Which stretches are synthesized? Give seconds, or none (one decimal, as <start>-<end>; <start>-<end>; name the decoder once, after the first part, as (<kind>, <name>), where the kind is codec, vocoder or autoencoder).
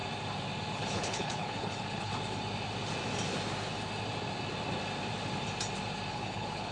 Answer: 0.7-2.1 (codec, HILCodec); 6.1-6.7